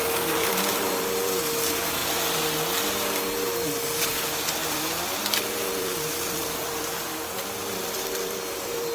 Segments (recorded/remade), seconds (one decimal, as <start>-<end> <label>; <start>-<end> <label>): 0.0-2.0 remade; 2.0-4.0 recorded; 4.0-8.9 remade